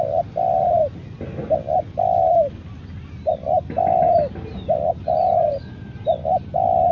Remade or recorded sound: recorded